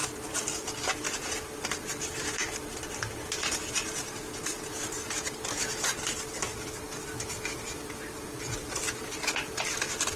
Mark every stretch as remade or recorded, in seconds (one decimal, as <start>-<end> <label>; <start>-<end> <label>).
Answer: 0.0-10.2 recorded